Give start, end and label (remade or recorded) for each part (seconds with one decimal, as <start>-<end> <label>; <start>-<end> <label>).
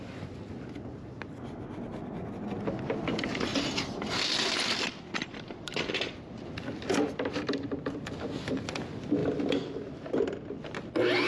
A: 0.0-3.5 recorded; 3.5-8.7 remade; 8.7-11.3 recorded